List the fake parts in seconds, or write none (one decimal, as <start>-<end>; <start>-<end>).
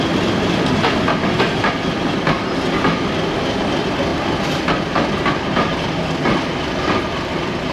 none